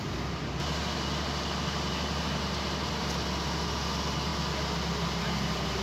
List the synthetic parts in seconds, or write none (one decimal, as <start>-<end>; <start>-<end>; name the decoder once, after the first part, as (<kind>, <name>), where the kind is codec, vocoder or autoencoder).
none

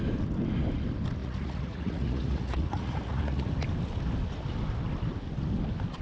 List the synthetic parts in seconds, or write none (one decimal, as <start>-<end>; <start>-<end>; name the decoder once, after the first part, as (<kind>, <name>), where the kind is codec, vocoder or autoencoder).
1.2-3.5 (vocoder, Vocos)

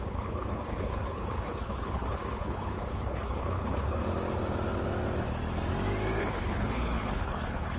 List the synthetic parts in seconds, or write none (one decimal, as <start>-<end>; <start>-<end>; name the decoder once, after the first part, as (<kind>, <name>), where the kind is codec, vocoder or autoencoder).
0.0-4.0 (codec, HILCodec); 6.2-7.8

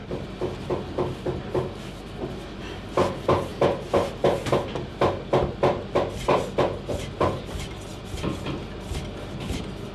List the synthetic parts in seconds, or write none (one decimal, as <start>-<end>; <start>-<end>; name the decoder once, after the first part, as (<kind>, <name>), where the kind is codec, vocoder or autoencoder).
none

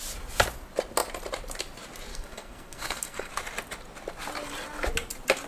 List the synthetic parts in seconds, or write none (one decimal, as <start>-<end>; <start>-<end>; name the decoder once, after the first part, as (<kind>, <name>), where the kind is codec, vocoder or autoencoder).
2.1-3.3 (codec, SNAC)